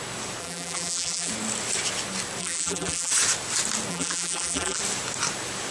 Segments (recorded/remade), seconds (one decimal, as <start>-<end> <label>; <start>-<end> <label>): 0.0-0.4 recorded; 0.4-1.3 remade; 1.3-2.4 recorded; 2.4-3.1 remade; 3.1-3.9 recorded; 3.9-4.8 remade; 4.8-5.7 recorded